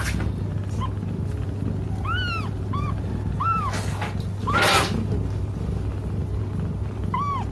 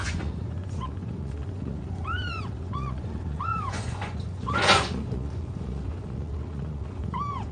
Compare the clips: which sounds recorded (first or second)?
first